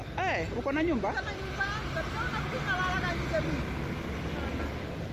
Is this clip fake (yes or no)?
no